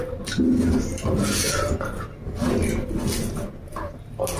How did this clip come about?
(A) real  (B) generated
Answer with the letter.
A